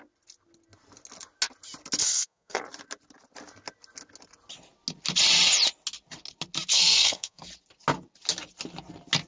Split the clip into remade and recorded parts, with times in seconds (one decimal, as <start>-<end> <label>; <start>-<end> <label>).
0.0-2.0 recorded; 2.0-2.6 remade; 2.6-6.7 recorded; 6.7-7.5 remade; 7.5-9.3 recorded